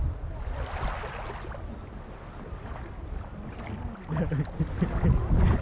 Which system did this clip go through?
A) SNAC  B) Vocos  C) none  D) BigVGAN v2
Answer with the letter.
C